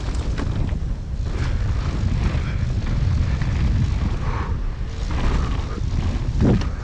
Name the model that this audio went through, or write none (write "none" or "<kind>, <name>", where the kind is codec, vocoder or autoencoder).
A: none